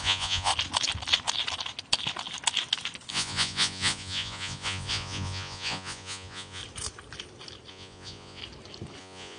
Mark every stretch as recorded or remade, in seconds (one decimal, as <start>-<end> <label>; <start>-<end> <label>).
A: 0.0-0.5 remade; 0.5-3.1 recorded; 3.1-6.6 remade; 6.6-7.7 recorded; 7.7-8.4 remade; 8.4-9.0 recorded; 9.0-9.4 remade